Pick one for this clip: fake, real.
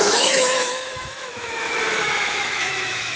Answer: fake